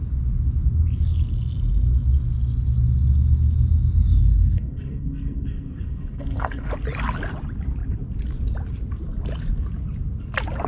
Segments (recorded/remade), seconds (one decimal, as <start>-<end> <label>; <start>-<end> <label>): 0.0-4.2 recorded; 4.2-6.7 remade; 6.7-10.7 recorded